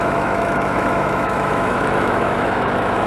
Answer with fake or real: fake